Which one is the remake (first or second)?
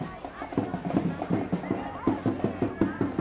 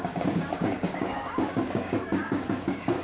second